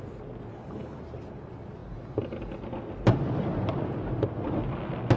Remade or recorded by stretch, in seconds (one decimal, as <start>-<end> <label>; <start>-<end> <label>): 0.0-0.5 recorded; 0.5-1.0 remade; 1.0-5.2 recorded

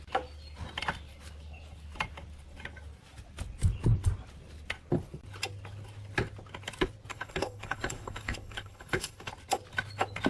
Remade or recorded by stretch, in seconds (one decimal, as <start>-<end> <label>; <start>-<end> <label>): 0.0-7.1 recorded; 7.1-9.3 remade; 9.3-10.3 recorded

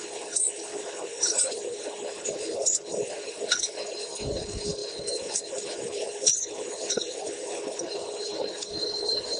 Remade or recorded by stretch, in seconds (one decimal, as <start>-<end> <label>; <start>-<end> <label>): 0.0-9.4 remade

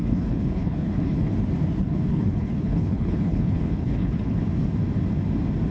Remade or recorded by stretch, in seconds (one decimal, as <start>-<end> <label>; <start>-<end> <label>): 0.0-1.3 remade; 1.3-1.8 recorded; 1.8-4.4 remade; 4.4-5.7 recorded

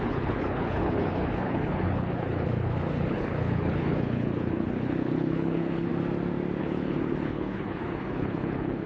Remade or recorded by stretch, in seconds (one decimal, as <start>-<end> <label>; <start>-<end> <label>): 0.0-5.9 remade; 5.9-6.6 recorded; 6.6-8.9 remade